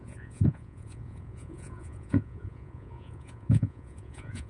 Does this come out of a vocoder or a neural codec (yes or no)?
yes